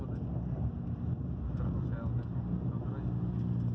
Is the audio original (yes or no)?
yes